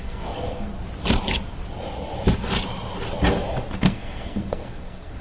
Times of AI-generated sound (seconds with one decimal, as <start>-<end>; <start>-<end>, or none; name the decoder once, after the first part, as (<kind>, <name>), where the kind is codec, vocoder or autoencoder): 0.0-0.7 (codec, SNAC); 3.8-5.2